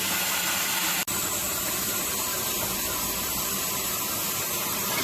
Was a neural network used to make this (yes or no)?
no